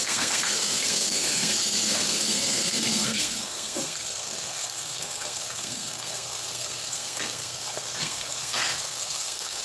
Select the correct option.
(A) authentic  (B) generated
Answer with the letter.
B